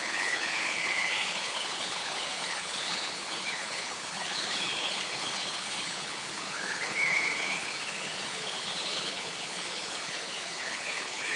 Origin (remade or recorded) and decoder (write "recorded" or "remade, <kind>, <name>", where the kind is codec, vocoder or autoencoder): remade, codec, HILCodec